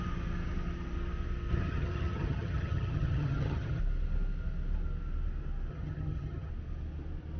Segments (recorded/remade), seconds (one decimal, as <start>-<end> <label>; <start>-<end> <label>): 0.0-1.5 recorded; 1.5-3.8 remade; 3.8-5.7 recorded; 5.7-6.5 remade; 6.5-7.4 recorded